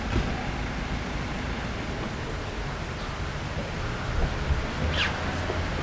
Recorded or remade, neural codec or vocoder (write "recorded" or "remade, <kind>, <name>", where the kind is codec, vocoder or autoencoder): recorded